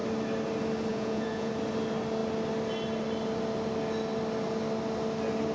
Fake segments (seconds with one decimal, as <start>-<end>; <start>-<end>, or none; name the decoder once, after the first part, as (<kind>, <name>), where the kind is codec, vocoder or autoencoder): 0.9-1.5 (vocoder, Vocos)